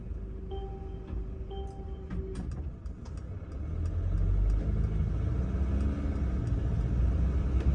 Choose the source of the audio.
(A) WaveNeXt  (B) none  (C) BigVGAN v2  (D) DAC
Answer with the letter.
B